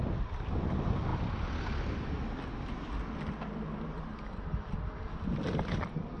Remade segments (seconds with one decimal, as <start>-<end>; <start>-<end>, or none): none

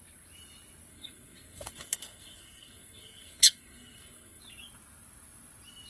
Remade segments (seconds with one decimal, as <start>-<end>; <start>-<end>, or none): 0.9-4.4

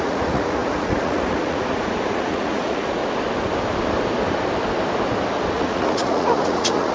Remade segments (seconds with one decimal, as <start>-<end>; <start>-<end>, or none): 0.0-3.0; 5.5-6.9

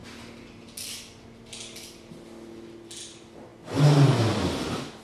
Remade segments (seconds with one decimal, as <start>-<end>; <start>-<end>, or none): none